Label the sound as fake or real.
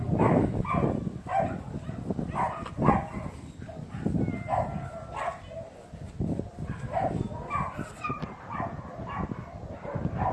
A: real